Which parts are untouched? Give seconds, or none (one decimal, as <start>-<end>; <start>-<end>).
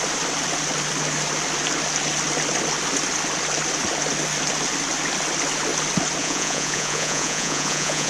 0.0-6.2